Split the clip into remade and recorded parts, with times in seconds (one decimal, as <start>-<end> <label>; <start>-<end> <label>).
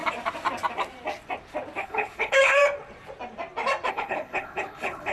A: 0.0-1.8 recorded; 1.8-2.6 remade; 2.6-3.9 recorded; 3.9-5.1 remade